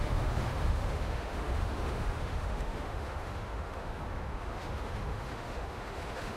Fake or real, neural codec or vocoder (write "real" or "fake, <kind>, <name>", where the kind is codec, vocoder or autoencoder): fake, autoencoder, DAC-VAE